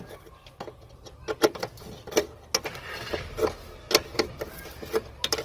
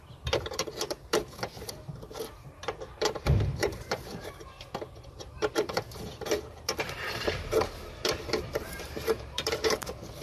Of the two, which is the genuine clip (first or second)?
first